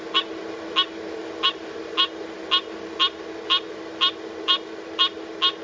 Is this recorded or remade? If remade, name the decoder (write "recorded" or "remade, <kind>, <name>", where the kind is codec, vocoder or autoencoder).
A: recorded